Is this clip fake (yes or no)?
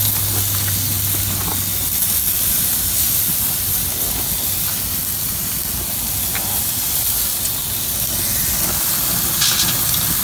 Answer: no